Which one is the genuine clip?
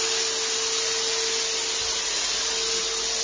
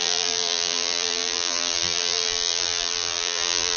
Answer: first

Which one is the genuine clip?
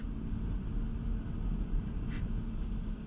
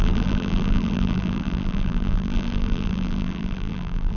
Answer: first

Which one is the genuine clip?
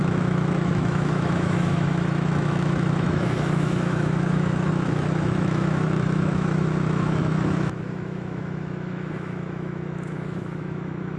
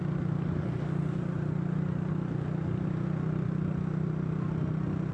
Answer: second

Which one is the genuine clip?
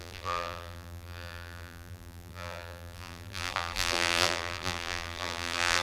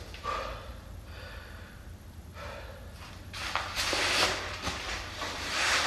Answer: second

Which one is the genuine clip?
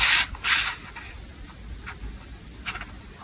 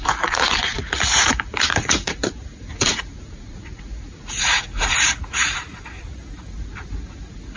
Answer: first